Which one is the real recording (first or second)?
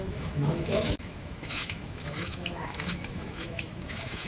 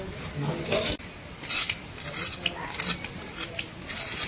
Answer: second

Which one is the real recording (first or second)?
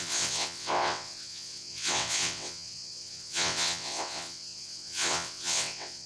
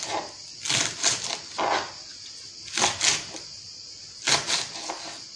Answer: second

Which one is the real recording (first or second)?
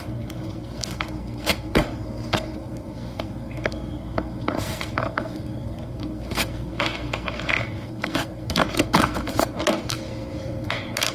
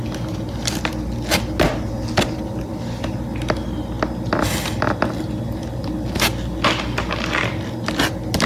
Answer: second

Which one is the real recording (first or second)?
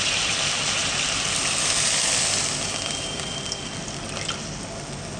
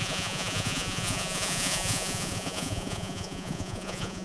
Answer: first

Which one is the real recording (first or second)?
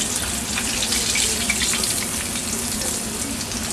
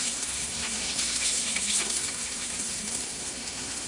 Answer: first